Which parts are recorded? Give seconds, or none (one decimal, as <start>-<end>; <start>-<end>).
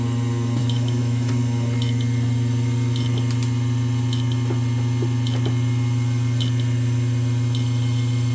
0.0-0.6; 1.3-8.3